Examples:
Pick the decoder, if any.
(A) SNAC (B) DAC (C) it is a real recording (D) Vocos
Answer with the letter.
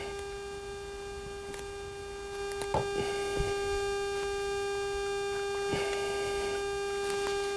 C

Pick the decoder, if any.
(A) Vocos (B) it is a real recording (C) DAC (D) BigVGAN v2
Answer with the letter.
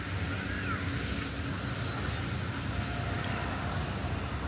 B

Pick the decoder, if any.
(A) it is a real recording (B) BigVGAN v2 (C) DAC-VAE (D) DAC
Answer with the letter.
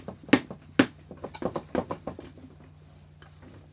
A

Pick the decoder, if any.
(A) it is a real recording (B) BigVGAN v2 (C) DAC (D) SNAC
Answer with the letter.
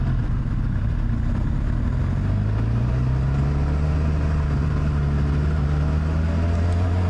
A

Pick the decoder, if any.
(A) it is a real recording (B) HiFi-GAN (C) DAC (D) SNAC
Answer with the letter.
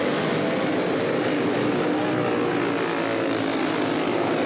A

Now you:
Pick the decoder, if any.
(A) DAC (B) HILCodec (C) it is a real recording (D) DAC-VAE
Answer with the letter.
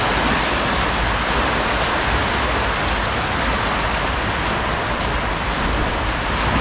C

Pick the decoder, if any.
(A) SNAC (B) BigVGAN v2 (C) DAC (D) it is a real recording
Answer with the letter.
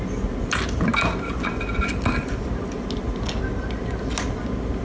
D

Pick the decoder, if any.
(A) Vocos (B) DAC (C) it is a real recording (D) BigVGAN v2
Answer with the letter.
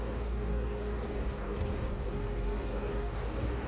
B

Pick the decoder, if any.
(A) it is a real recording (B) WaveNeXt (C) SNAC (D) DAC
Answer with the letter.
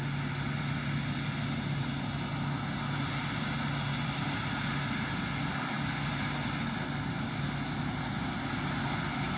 A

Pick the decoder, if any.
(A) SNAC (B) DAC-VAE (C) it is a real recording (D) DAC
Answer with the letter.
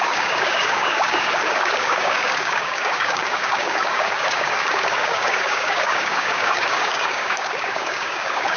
D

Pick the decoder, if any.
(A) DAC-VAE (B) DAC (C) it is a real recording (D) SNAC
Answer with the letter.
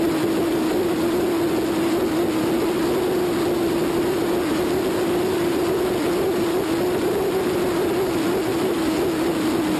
C